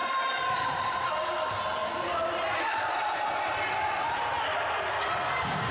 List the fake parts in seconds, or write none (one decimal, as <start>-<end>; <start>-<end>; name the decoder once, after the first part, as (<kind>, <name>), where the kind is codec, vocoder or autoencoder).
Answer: 0.0-1.1 (vocoder, BigVGAN v2)